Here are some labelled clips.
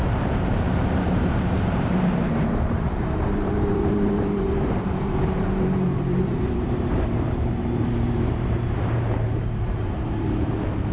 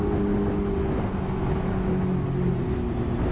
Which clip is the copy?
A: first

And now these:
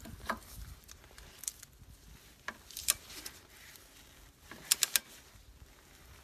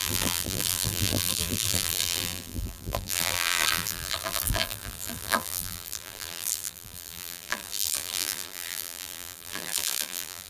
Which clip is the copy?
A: second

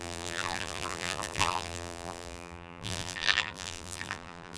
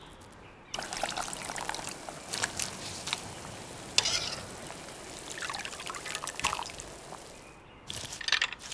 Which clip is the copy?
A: first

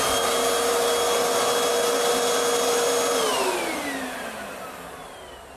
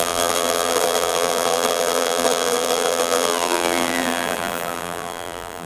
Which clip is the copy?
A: second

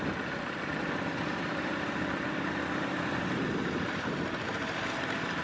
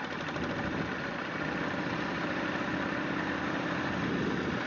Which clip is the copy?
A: first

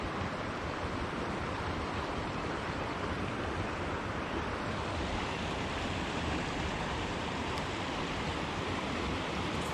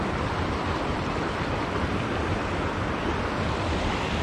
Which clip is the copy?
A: first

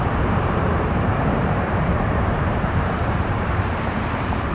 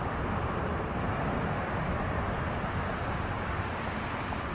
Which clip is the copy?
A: first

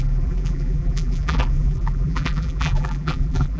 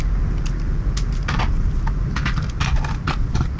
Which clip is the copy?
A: first